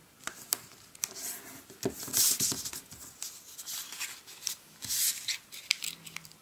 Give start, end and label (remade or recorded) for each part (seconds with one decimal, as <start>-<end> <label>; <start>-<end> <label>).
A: 0.0-4.3 recorded; 4.3-6.4 remade

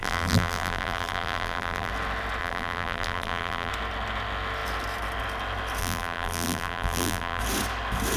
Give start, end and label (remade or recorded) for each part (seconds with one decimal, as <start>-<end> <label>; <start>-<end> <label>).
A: 0.0-1.9 remade; 1.9-2.4 recorded; 2.4-3.7 remade; 3.7-5.8 recorded; 5.8-7.4 remade; 7.4-8.2 recorded